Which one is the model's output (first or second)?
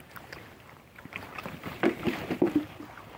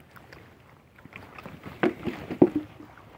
first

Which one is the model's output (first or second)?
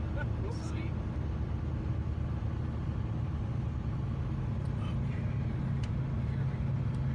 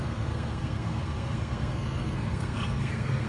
second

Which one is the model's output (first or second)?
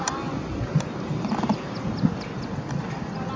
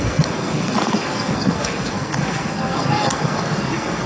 second